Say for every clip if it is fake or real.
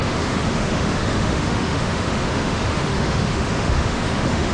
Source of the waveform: fake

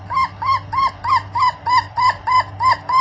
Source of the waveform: real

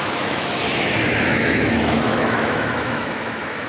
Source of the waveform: fake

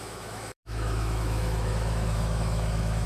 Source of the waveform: fake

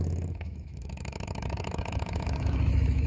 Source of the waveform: fake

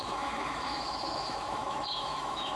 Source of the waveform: fake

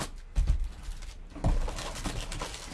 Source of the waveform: real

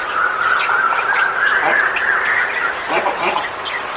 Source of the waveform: real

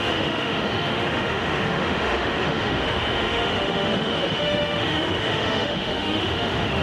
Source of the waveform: fake